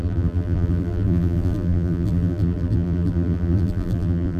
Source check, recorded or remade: remade